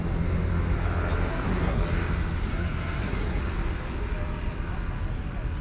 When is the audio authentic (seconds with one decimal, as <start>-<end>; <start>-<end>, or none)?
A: 0.0-1.3; 1.8-2.5; 3.4-5.6